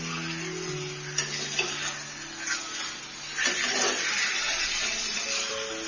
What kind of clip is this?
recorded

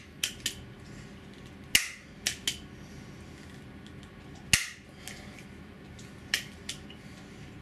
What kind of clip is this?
recorded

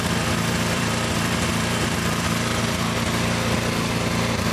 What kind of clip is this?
remade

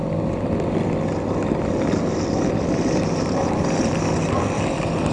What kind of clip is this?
recorded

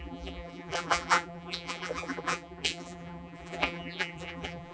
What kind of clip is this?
remade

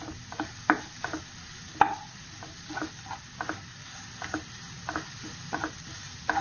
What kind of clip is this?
recorded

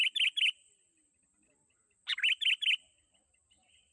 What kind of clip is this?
recorded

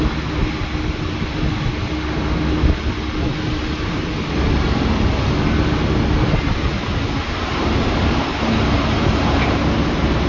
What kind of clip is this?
recorded